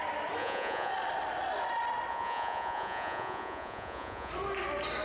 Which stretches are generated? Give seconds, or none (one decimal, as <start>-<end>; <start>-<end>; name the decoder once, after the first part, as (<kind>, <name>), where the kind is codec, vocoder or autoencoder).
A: 0.4-0.9 (vocoder, Vocos); 2.1-4.3